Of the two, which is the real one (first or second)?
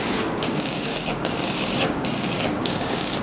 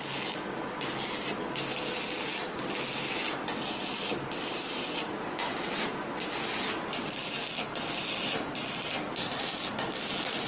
second